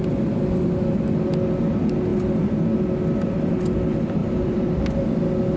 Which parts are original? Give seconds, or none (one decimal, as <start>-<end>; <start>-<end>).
0.0-4.2; 4.8-5.6